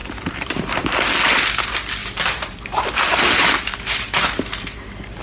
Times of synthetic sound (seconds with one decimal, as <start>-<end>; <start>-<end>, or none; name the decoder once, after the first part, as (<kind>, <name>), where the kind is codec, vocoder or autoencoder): 0.0-0.8 (vocoder, BigVGAN v2); 2.0-5.2